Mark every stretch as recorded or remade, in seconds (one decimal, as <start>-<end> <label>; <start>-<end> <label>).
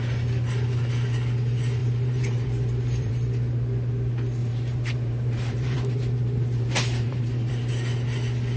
0.0-1.8 recorded; 1.8-3.1 remade; 3.1-4.4 recorded; 4.4-7.5 remade; 7.5-8.6 recorded